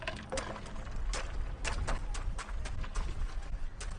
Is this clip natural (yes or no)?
yes